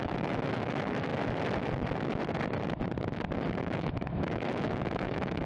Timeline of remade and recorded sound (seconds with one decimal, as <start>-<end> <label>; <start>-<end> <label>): 0.0-1.1 remade; 1.1-3.6 recorded; 3.6-5.5 remade